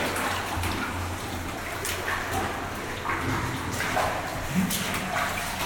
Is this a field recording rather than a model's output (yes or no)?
yes